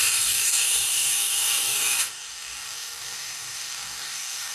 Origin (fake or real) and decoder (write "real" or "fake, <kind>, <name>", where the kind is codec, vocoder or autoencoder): fake, codec, DAC